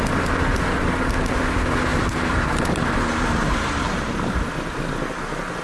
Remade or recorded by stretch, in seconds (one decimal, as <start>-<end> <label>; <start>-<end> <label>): 0.0-1.9 recorded; 1.9-4.5 remade; 4.5-5.6 recorded